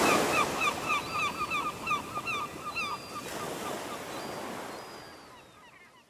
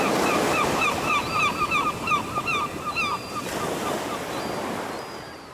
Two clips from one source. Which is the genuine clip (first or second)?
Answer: first